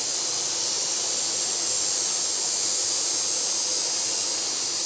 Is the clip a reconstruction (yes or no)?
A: no